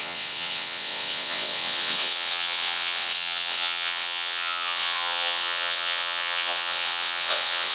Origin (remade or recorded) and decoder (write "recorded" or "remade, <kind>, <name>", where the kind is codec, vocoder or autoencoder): remade, vocoder, WaveNeXt